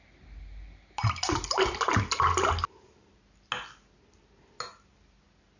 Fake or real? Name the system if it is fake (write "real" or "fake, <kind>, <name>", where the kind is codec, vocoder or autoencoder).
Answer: real